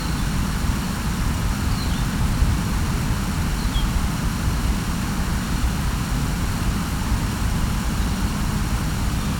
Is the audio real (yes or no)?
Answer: yes